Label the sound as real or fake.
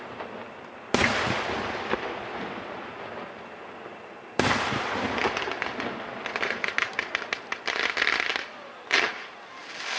real